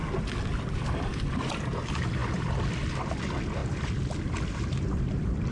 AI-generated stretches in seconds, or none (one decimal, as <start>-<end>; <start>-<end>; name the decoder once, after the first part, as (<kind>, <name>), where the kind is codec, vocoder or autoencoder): 2.2-3.2 (vocoder, BigVGAN v2)